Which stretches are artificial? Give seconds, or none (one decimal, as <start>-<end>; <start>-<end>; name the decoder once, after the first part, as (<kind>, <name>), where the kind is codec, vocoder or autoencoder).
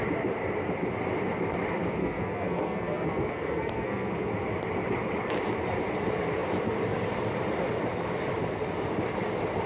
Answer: 2.0-4.1 (codec, SNAC)